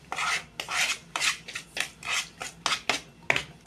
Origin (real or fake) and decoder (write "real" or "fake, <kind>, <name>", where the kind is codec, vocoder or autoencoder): real